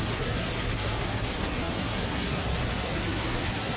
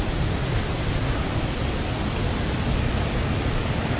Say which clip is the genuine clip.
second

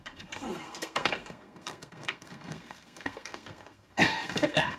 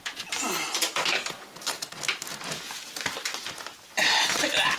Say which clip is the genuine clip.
second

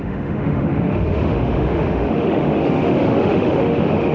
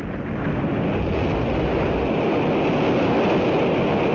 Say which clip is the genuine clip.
second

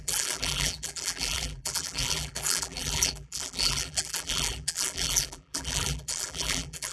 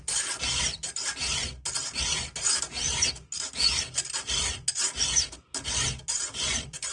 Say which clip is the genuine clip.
second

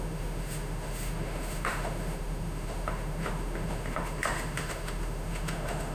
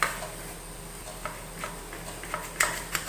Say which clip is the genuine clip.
second